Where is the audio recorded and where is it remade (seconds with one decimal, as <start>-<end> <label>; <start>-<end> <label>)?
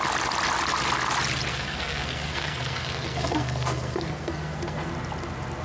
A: 0.0-1.5 recorded; 1.5-4.9 remade; 4.9-5.6 recorded